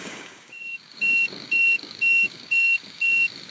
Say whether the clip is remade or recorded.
remade